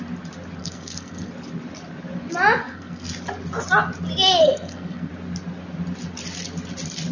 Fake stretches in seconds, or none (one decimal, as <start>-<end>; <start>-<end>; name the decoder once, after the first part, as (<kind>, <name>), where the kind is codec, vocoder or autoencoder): 0.6-1.3 (codec, SNAC); 2.6-3.1; 4.4-5.1